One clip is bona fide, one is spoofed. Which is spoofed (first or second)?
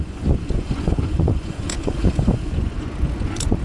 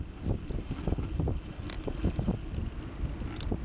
first